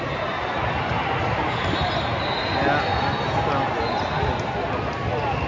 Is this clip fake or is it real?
real